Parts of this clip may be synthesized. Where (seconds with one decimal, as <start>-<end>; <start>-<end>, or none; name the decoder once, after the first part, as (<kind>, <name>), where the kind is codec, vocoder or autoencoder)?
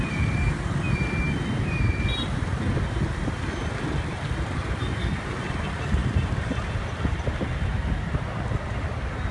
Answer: 6.0-7.0 (vocoder, BigVGAN v2)